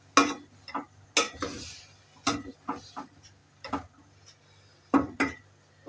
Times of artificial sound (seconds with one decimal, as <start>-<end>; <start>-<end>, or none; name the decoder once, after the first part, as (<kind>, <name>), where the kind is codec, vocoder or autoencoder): none